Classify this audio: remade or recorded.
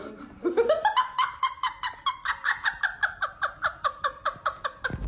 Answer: recorded